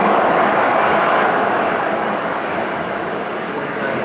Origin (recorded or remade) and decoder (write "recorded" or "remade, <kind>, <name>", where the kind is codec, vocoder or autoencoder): remade, codec, DAC